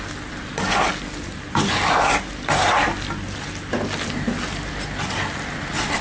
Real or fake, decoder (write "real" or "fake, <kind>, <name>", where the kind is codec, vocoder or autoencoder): real